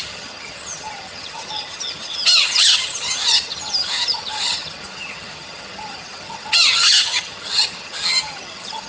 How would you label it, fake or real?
fake